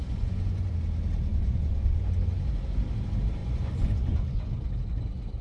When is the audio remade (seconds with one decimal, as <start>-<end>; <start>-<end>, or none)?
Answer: 0.0-0.7; 1.3-2.1; 3.4-4.4